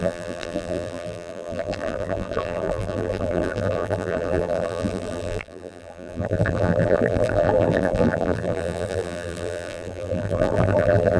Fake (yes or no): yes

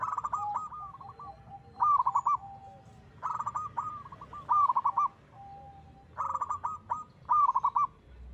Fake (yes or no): no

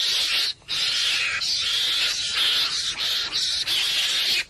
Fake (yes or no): no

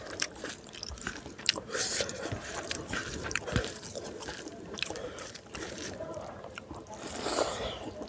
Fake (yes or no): yes